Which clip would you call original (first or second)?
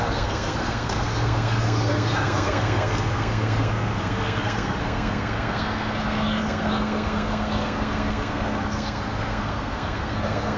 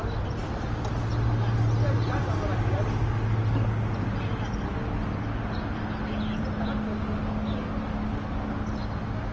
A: second